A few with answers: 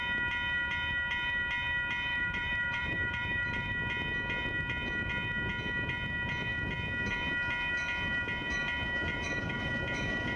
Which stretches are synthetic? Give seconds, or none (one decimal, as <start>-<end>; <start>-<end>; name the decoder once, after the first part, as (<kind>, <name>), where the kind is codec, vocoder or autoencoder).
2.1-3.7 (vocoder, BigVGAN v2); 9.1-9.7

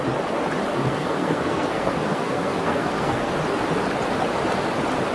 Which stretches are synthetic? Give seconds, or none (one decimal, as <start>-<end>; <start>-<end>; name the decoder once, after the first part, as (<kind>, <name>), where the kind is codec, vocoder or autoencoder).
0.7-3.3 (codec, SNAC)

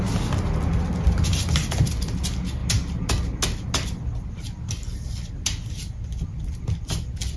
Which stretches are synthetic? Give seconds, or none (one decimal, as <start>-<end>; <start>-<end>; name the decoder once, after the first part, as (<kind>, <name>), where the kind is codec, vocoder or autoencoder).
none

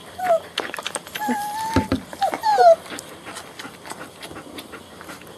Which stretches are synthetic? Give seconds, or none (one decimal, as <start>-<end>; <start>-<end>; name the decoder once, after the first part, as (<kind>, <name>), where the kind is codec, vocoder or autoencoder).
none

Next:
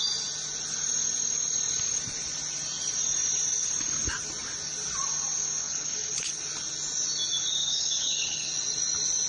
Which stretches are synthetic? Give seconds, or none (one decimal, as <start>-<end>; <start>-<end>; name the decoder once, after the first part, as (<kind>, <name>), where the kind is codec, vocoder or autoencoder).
5.6-6.4 (codec, HILCodec); 7.6-8.5

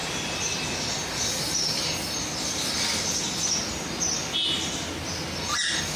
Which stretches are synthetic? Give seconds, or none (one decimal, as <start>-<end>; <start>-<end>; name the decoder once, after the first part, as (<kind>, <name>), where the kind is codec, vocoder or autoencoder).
none

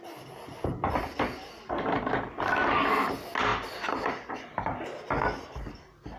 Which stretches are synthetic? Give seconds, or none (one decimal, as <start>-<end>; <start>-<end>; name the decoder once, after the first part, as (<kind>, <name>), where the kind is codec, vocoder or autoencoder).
none